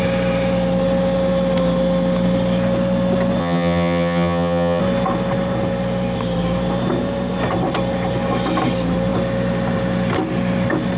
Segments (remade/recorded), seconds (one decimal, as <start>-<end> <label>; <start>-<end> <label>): 0.0-3.4 recorded; 3.4-4.8 remade; 4.8-11.0 recorded